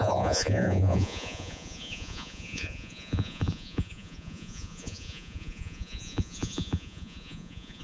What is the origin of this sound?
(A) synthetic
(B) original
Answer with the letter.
A